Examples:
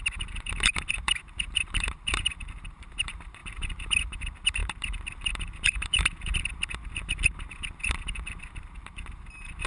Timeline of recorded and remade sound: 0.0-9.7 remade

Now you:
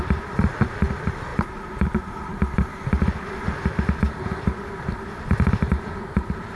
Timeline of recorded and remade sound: 0.0-1.3 remade; 1.3-4.4 recorded; 4.4-6.6 remade